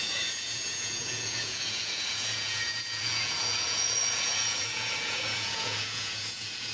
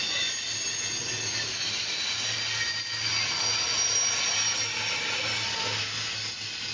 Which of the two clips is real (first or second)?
second